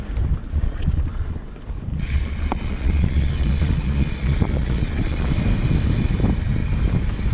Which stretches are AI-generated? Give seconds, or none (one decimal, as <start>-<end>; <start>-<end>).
0.4-1.4; 1.9-5.3